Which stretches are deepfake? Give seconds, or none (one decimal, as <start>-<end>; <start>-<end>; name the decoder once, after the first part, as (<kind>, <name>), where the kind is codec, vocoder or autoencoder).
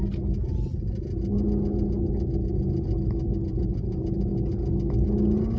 none